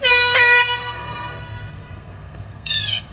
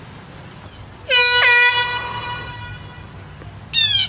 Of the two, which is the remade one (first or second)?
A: first